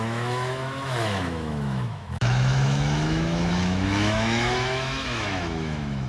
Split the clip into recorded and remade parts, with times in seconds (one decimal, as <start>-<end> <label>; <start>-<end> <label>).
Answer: 0.0-6.1 remade